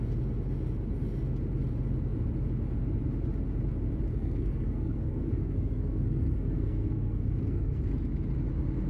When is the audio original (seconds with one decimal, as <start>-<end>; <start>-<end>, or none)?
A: 0.0-4.1; 7.8-8.9